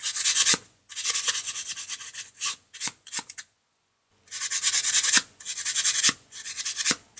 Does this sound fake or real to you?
fake